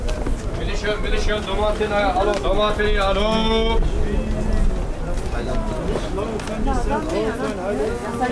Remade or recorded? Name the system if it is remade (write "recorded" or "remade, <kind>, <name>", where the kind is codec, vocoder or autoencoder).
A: recorded